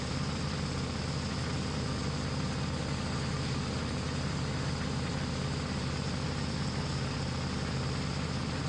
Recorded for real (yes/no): yes